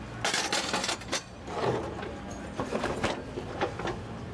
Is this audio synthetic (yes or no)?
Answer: no